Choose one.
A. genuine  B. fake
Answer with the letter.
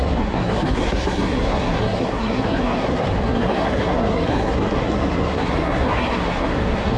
B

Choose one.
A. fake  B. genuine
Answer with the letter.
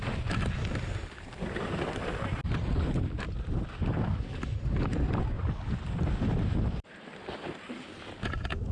B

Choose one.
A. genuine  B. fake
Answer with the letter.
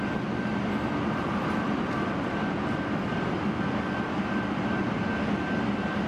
A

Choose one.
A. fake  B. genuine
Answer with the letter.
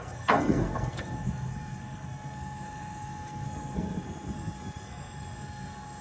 A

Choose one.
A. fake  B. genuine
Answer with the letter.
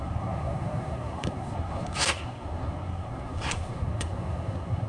A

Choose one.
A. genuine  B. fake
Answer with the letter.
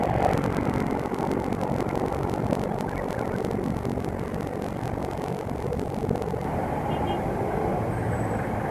A